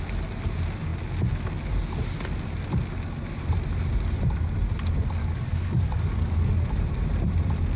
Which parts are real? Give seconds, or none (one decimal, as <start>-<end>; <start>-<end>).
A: 0.0-5.2; 6.5-7.8

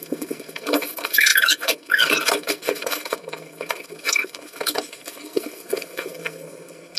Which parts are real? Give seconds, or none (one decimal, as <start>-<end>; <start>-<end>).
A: none

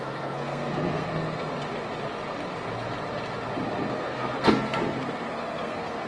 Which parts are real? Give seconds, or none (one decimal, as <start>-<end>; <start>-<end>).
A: 1.5-3.9

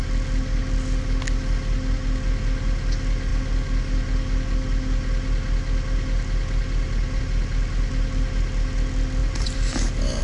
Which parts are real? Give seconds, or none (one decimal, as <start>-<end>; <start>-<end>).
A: 0.0-9.2

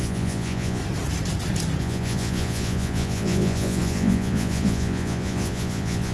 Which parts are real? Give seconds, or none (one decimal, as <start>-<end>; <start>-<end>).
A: 0.8-1.8